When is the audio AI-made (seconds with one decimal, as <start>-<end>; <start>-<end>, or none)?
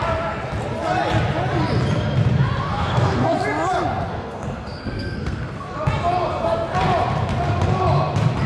2.7-3.4; 4.1-5.7